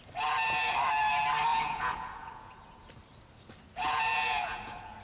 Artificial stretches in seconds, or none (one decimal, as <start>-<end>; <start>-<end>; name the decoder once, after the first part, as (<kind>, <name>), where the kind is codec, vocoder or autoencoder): 1.5-2.9 (vocoder, Vocos); 3.7-5.0